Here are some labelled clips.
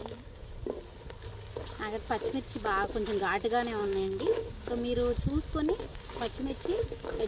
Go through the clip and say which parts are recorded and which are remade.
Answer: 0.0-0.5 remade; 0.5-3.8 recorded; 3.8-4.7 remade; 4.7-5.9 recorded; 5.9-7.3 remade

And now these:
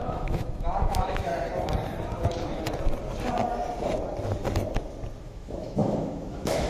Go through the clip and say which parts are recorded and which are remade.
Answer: 0.0-1.3 remade; 1.3-5.2 recorded; 5.2-6.7 remade

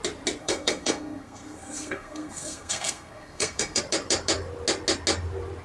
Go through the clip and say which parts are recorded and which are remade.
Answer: 0.0-0.4 recorded; 0.4-3.8 remade; 3.8-5.6 recorded

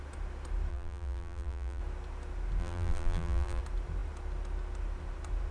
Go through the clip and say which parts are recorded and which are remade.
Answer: 0.0-0.7 recorded; 0.7-1.8 remade; 1.8-2.6 recorded; 2.6-3.6 remade; 3.6-5.5 recorded

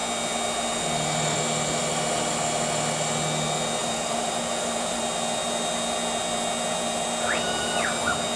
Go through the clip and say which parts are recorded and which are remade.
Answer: 0.0-3.8 recorded; 3.8-5.0 remade; 5.0-8.4 recorded

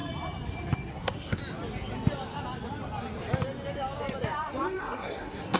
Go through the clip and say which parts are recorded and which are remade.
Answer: 0.0-0.9 recorded; 0.9-1.4 remade; 1.4-4.8 recorded; 4.8-5.6 remade

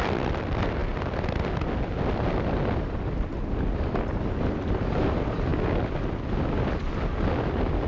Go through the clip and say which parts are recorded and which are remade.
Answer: 0.0-7.9 recorded